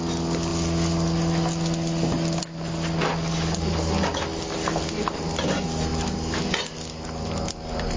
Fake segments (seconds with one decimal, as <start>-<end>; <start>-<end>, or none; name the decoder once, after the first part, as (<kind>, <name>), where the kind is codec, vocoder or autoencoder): none